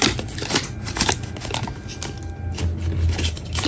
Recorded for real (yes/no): yes